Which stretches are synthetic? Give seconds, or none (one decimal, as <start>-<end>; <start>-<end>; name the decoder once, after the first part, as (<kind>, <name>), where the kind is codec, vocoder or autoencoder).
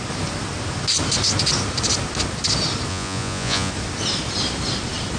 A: 2.9-3.7 (vocoder, Vocos)